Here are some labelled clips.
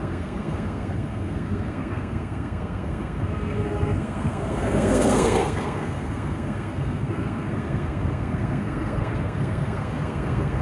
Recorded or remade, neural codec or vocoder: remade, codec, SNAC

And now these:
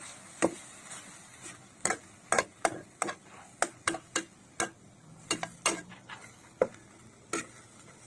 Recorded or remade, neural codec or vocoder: recorded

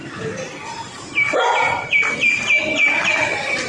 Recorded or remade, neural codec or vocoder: recorded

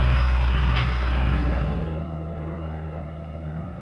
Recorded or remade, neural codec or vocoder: remade, codec, SNAC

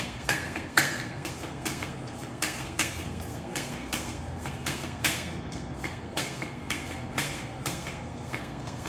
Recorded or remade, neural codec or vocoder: remade, codec, SNAC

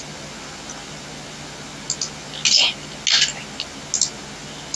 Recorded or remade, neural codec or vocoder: recorded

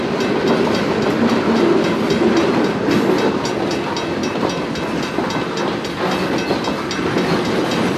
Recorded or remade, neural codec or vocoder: recorded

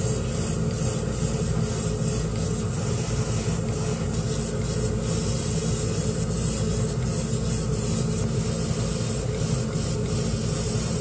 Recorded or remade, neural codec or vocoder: recorded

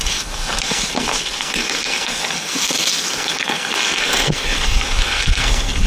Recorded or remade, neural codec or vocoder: remade, codec, SNAC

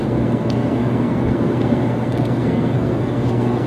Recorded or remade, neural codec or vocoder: remade, codec, SNAC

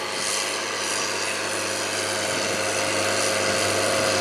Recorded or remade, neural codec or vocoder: recorded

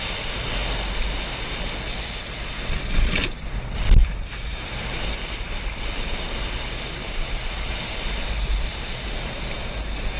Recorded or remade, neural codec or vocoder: recorded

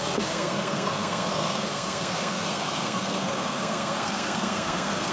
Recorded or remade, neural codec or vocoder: remade, codec, SNAC